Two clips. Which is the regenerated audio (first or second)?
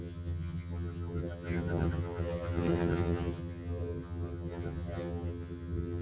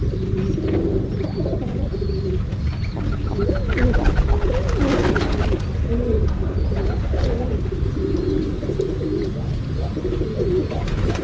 first